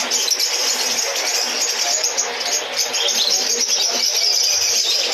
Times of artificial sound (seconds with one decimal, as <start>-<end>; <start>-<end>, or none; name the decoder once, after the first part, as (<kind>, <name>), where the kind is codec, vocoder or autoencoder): none